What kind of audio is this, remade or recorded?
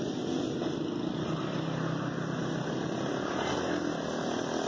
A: recorded